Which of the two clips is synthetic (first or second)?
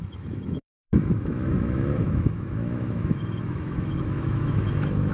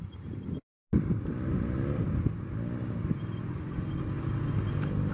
first